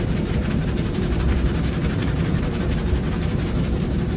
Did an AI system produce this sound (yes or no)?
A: yes